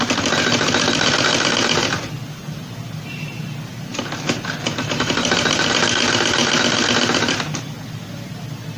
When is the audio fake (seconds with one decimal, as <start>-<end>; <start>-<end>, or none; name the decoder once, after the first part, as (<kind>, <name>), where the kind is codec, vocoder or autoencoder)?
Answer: none